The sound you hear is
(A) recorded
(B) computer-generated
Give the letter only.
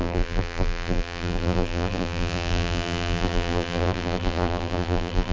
B